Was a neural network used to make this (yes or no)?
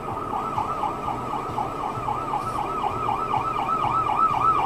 no